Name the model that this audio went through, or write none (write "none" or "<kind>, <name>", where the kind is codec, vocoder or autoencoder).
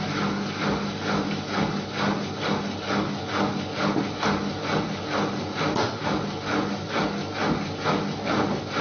none